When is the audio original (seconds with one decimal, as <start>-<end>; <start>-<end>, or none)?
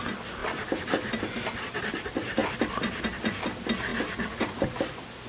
0.0-5.3